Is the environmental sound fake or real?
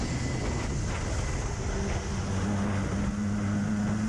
real